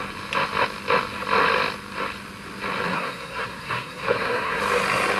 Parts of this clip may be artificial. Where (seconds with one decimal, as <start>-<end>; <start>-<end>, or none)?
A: 2.9-4.6